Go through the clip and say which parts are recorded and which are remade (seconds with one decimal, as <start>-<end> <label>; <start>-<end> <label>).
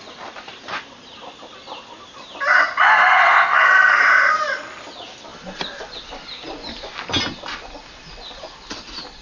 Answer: 0.0-2.9 recorded; 2.9-4.0 remade; 4.0-9.2 recorded